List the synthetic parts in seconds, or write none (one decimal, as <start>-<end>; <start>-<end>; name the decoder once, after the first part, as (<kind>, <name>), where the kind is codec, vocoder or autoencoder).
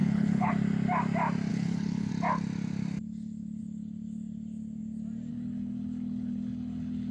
0.0-0.5 (codec, HILCodec); 1.5-2.1; 5.3-7.1